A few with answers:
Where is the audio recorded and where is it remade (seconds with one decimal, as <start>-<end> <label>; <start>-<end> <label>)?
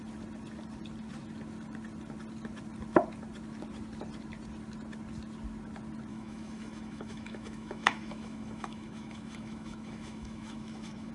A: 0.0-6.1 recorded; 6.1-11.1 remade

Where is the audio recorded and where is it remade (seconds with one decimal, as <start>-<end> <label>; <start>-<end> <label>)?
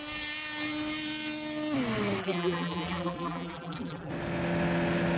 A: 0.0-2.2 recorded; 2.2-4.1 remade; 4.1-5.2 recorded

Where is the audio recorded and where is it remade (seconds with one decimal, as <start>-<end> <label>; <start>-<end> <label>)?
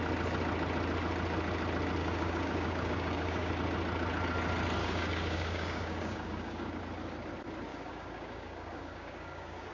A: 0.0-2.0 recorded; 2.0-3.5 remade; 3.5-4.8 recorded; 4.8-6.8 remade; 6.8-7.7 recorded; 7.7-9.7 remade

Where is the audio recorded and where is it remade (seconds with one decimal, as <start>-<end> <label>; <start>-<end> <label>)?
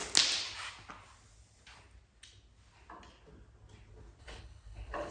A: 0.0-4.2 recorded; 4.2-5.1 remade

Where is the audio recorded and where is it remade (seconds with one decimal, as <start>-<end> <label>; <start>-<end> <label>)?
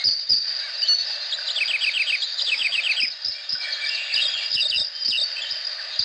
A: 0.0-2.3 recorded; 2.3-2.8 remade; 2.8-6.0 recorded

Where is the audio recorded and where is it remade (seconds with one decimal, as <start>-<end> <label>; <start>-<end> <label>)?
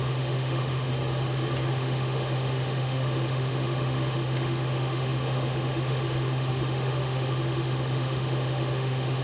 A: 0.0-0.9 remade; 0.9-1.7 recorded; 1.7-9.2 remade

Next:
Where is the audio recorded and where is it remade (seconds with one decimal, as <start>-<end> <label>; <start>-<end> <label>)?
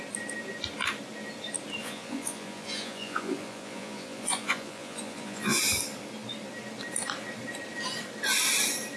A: 0.0-1.8 recorded; 1.8-5.6 remade; 5.6-9.0 recorded